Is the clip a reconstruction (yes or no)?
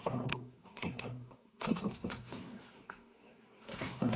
yes